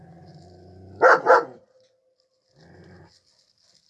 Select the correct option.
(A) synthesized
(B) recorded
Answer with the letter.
B